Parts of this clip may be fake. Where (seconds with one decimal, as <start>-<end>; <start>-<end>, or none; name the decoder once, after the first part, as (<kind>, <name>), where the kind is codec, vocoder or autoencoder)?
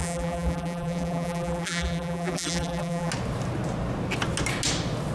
0.0-3.1 (vocoder, BigVGAN v2)